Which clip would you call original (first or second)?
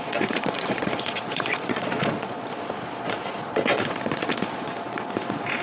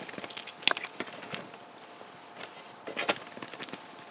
second